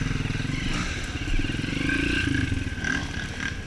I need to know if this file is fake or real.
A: real